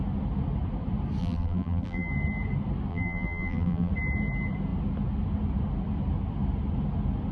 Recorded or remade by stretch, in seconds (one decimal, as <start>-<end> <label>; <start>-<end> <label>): 0.0-1.2 recorded; 1.2-2.1 remade; 2.1-2.9 recorded; 2.9-3.9 remade; 3.9-7.3 recorded